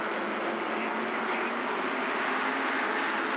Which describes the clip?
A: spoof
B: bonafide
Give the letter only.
B